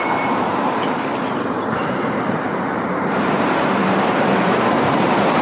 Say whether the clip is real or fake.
fake